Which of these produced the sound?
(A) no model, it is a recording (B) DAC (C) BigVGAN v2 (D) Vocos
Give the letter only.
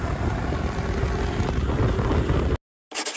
A